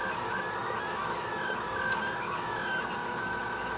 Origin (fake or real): real